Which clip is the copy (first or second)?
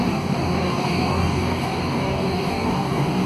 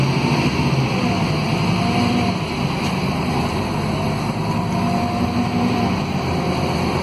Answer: first